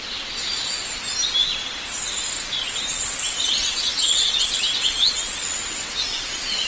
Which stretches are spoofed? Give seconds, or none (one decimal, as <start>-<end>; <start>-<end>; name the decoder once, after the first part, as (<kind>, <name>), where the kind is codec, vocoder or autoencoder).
2.9-6.7 (vocoder, WaveNeXt)

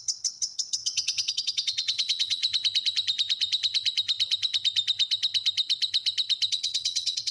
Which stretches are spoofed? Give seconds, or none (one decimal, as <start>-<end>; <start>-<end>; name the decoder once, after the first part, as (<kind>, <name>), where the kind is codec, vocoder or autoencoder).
0.0-2.4 (vocoder, WaveNeXt); 6.5-7.3

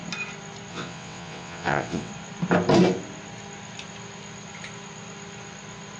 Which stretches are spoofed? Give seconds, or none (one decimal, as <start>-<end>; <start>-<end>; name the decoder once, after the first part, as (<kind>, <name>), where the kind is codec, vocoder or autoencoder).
0.7-2.1 (vocoder, WaveNeXt)